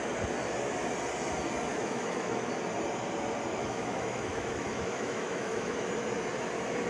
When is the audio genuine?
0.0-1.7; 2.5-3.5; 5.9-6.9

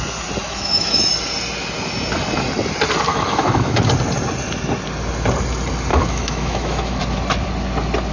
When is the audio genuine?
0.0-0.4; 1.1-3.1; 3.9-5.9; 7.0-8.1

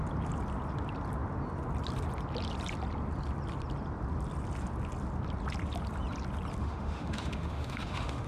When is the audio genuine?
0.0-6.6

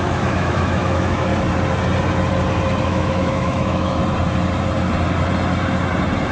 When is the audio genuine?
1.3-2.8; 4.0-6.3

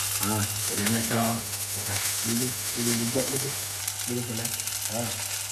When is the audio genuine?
0.0-0.6; 3.8-5.5

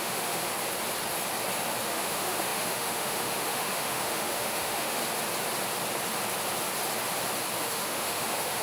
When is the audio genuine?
0.5-1.8; 5.0-7.6